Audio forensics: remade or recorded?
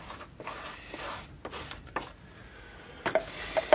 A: recorded